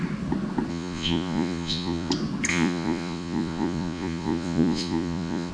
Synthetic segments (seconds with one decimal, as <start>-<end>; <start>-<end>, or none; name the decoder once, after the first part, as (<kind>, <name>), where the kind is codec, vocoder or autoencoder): 0.7-2.1 (vocoder, Vocos); 2.5-5.5